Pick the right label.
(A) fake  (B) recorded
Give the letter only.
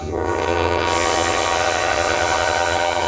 A